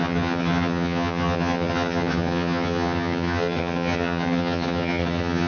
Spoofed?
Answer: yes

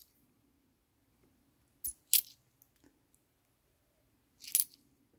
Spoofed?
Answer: no